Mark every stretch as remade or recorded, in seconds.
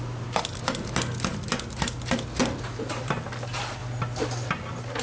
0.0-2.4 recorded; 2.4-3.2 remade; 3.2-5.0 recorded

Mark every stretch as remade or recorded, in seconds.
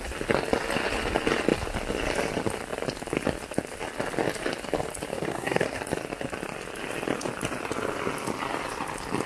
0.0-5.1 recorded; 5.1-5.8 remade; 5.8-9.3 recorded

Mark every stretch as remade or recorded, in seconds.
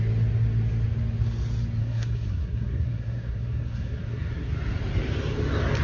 0.0-1.8 recorded; 1.8-4.5 remade; 4.5-5.8 recorded